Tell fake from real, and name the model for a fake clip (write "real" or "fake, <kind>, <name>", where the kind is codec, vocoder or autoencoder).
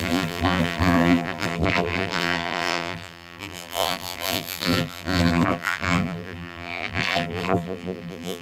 fake, vocoder, BigVGAN v2